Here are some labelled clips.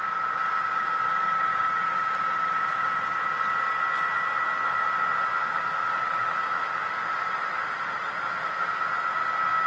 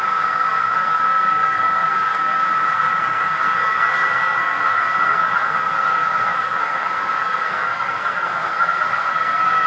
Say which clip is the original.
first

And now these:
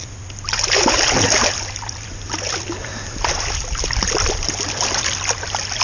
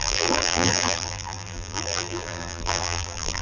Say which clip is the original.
first